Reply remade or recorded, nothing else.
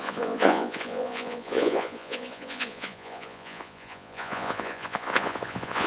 remade